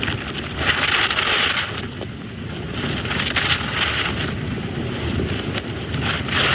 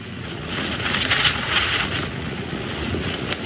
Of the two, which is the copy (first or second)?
second